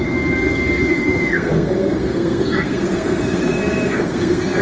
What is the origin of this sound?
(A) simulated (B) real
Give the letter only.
A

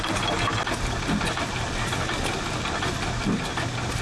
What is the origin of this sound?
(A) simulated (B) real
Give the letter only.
B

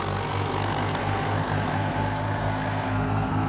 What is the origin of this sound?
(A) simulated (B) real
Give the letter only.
A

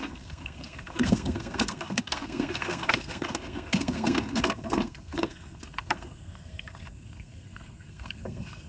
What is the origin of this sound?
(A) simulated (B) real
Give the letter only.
A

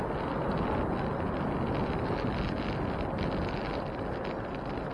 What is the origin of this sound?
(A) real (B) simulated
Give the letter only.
A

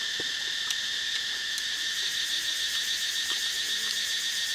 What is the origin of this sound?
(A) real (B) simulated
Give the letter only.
A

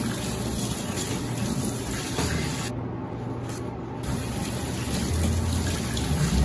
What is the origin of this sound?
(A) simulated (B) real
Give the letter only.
B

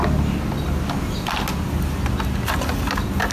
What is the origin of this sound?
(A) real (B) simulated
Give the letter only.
A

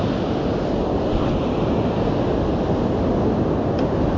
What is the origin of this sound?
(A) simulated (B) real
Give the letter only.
B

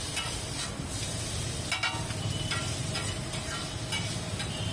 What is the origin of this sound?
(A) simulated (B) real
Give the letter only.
B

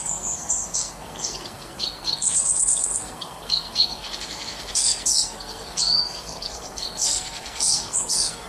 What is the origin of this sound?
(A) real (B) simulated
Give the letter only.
B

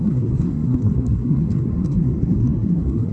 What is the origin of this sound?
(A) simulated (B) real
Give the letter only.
A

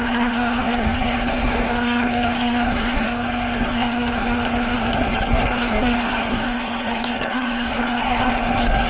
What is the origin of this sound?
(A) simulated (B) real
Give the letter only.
A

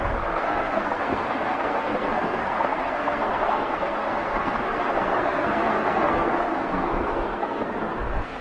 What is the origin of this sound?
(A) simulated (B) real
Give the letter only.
A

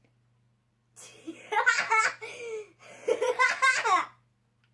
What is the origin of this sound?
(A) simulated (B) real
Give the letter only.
B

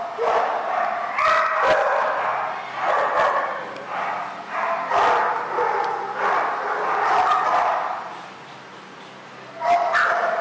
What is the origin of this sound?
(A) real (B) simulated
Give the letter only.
A